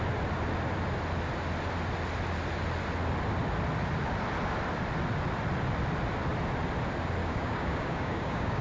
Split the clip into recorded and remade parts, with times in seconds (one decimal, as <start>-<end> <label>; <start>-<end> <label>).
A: 0.0-7.2 recorded; 7.2-8.6 remade